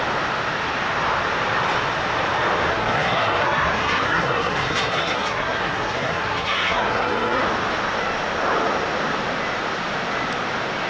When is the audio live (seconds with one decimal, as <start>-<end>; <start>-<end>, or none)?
0.0-2.7; 7.4-10.9